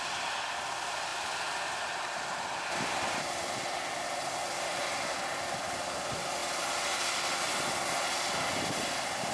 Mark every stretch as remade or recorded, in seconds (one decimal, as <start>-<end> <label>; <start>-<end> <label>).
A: 0.0-9.3 recorded